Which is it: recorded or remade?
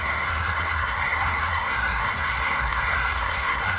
remade